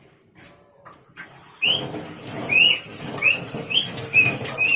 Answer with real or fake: real